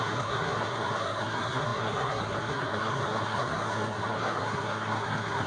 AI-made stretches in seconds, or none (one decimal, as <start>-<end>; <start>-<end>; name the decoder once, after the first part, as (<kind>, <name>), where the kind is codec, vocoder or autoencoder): 0.0-5.5 (codec, SNAC)